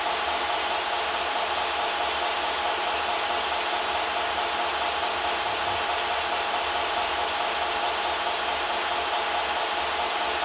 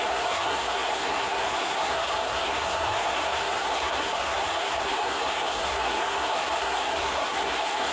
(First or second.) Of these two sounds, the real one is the first